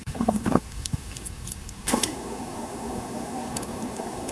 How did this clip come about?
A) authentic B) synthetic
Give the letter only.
B